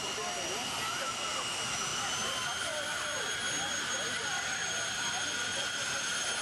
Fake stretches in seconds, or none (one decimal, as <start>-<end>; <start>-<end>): none